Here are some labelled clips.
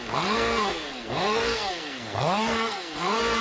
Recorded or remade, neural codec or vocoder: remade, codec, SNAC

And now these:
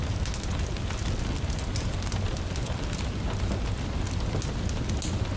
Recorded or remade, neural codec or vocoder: recorded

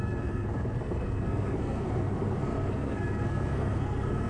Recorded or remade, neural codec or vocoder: remade, codec, SNAC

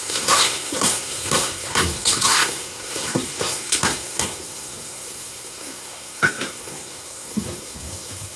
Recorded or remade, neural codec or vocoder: remade, codec, SNAC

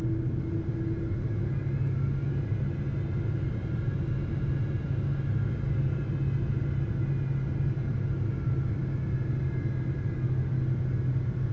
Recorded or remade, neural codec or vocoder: recorded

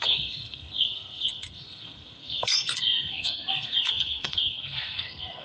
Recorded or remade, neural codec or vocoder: remade, codec, SNAC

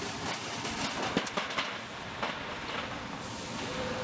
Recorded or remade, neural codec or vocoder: recorded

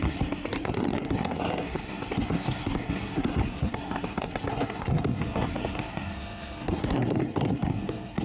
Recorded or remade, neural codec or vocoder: remade, codec, SNAC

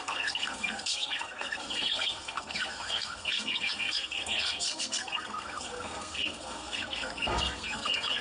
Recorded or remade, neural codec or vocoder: remade, codec, SNAC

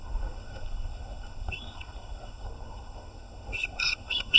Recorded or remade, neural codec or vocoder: remade, codec, SNAC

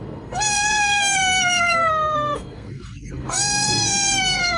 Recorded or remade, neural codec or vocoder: remade, codec, SNAC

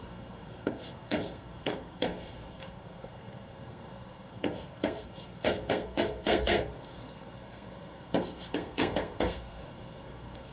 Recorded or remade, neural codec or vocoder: remade, codec, SNAC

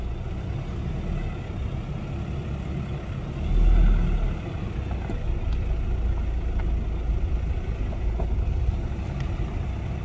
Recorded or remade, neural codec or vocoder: recorded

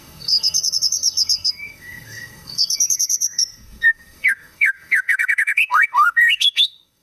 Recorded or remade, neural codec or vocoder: remade, codec, SNAC